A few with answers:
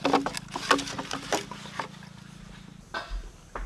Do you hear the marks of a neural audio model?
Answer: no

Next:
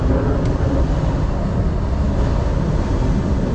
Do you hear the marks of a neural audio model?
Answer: no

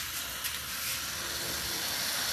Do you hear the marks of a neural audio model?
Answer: no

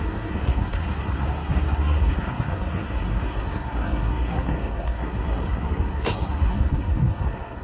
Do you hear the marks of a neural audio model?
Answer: yes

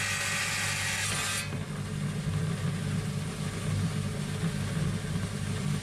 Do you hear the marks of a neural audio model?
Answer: no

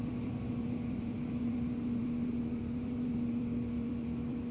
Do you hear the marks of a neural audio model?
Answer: yes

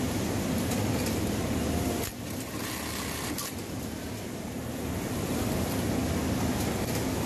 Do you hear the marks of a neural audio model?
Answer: no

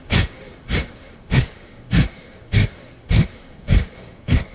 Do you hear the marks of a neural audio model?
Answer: yes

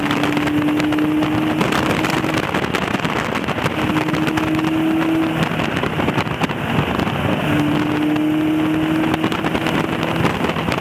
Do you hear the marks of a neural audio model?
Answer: no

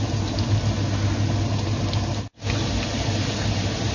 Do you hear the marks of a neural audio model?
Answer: no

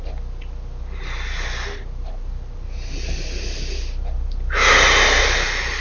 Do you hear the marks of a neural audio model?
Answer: no